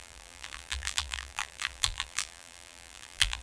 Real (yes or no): no